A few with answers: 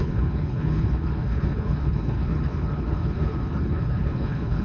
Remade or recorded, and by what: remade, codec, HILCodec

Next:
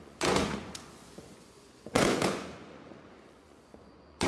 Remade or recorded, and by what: remade, vocoder, Vocos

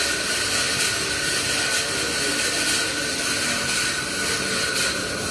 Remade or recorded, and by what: recorded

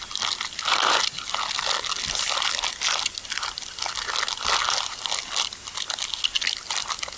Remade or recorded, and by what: recorded